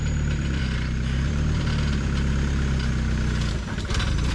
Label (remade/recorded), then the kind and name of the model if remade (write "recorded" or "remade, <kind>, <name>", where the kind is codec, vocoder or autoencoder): remade, vocoder, BigVGAN v2